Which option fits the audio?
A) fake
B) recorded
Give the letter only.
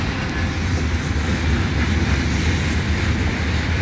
B